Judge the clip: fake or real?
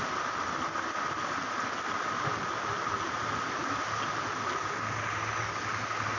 real